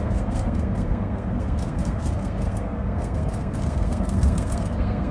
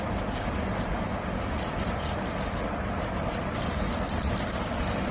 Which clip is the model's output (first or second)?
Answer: first